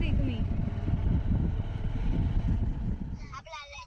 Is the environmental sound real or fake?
real